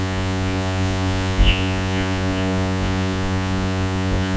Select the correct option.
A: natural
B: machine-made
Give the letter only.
B